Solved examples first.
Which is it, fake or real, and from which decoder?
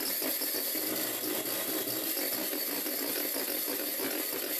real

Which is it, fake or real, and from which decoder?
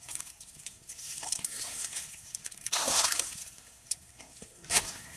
fake, codec, SNAC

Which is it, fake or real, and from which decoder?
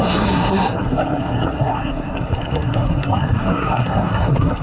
fake, codec, SNAC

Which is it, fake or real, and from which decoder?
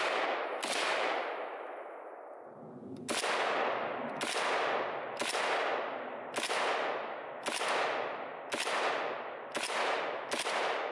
real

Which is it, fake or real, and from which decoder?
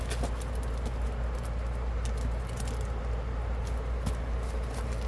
real